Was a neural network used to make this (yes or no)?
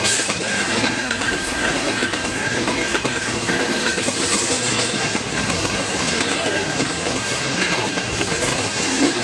yes